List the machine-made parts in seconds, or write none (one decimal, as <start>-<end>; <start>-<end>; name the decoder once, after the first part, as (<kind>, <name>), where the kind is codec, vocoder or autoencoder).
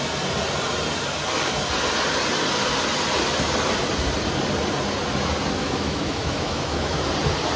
5.6-7.1 (autoencoder, DAC-VAE)